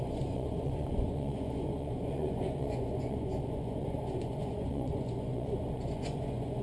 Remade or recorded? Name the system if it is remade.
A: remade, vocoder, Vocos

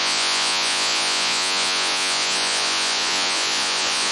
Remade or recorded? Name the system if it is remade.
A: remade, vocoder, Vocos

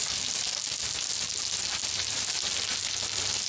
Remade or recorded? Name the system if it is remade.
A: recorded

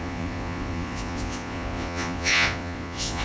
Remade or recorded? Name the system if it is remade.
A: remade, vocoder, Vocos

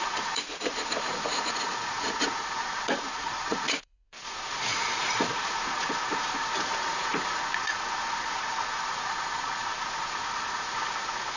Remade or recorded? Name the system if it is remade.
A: remade, vocoder, Vocos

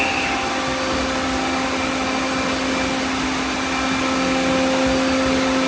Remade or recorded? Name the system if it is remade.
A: recorded